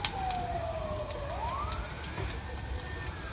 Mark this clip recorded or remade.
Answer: recorded